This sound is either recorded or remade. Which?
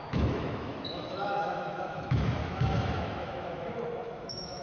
remade